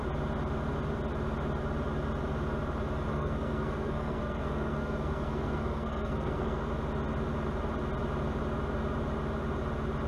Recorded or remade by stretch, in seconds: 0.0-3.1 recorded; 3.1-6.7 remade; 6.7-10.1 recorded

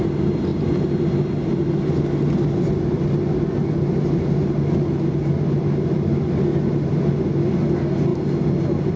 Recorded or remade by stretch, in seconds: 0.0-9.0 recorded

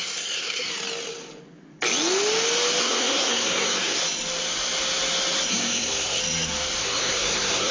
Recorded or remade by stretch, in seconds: 0.0-0.7 remade; 0.7-2.8 recorded; 2.8-4.0 remade; 4.0-5.5 recorded; 5.5-6.2 remade; 6.2-6.8 recorded; 6.8-7.7 remade

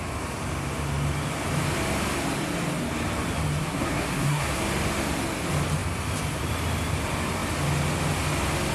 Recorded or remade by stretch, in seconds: 0.0-3.6 recorded; 3.6-4.6 remade; 4.6-8.7 recorded